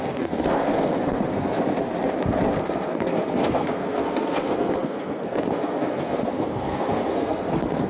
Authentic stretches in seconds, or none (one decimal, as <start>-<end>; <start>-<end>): 1.5-2.6

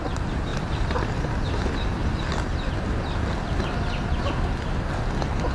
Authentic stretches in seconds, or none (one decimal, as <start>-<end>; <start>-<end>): 0.0-5.5

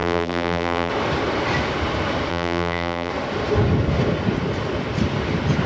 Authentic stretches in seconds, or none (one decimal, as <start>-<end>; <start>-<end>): 0.9-2.3; 3.1-5.7

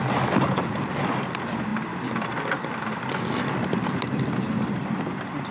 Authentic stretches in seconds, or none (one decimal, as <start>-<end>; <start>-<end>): 0.0-1.7; 5.0-5.5

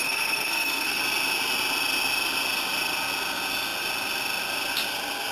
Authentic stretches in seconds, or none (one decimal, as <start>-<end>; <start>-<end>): 1.0-5.3

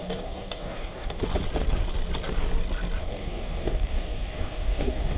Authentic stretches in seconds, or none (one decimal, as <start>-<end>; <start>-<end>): 1.2-3.0

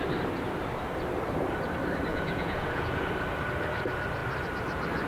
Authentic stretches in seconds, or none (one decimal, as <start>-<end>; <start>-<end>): 0.0-2.1; 3.1-5.1

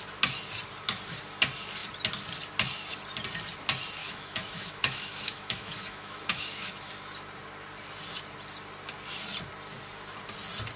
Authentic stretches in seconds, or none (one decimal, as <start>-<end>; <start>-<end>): 0.0-4.0; 6.9-10.8